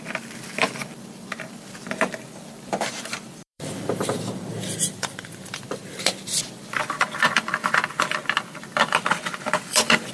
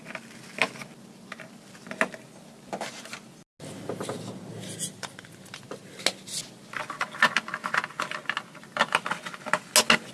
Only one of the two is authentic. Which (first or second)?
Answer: second